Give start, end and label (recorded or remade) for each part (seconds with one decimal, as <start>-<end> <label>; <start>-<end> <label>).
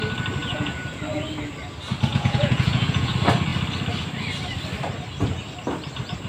0.0-0.4 recorded; 0.4-1.0 remade; 1.0-2.1 recorded; 2.1-3.1 remade; 3.1-6.3 recorded